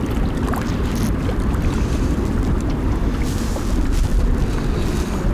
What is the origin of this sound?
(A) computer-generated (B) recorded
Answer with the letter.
B